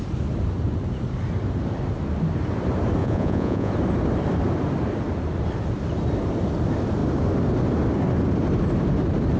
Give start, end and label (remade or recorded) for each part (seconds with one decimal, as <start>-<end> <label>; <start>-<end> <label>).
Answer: 0.0-3.0 recorded; 3.0-3.7 remade; 3.7-9.4 recorded